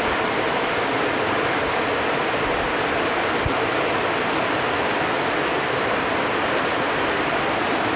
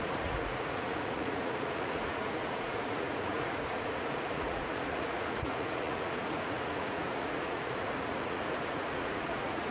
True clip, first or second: first